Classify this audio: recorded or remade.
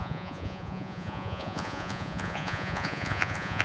remade